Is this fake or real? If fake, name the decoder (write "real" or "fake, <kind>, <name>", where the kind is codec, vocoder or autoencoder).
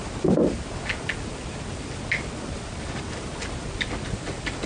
real